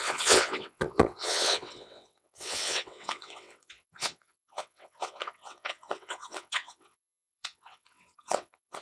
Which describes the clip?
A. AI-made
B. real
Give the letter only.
A